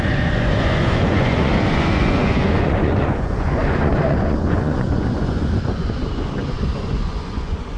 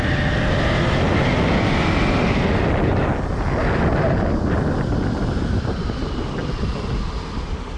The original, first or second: second